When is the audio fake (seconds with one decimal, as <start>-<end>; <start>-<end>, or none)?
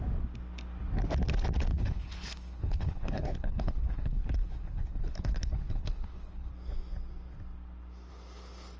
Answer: 1.7-6.5